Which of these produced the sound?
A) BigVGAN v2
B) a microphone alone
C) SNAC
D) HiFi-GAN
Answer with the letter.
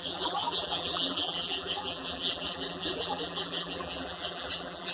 A